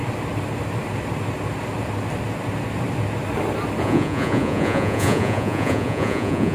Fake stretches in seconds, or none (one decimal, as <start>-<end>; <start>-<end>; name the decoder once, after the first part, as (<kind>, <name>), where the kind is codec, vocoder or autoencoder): 3.8-6.5 (vocoder, Vocos)